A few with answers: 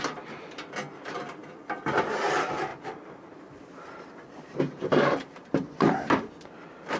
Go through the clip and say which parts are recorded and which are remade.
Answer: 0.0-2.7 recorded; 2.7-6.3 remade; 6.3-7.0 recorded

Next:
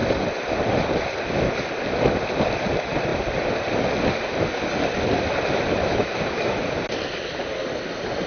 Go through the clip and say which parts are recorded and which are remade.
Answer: 0.0-5.8 recorded; 5.8-6.6 remade; 6.6-8.3 recorded

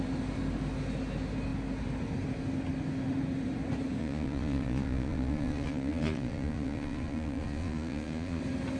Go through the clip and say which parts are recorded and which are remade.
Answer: 0.0-4.0 recorded; 4.0-8.4 remade; 8.4-8.8 recorded

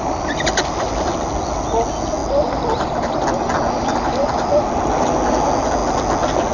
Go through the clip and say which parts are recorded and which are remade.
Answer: 0.0-6.5 recorded